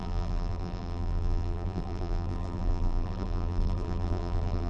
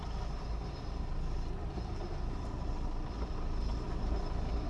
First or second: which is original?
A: second